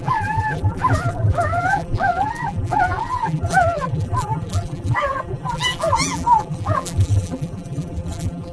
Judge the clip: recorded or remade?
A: remade